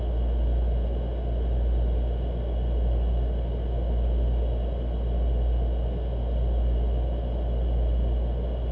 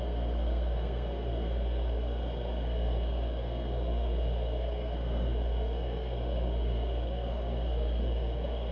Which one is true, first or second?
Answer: first